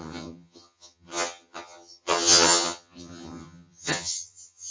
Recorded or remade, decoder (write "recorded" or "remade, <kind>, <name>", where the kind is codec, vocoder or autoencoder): remade, vocoder, HiFi-GAN